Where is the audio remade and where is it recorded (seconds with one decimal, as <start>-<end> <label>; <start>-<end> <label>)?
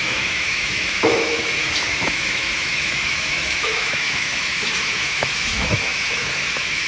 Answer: 0.0-6.9 remade